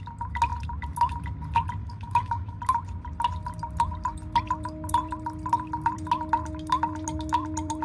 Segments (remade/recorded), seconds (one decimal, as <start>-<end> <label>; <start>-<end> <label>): 0.0-1.8 recorded; 1.8-2.6 remade; 2.6-7.8 recorded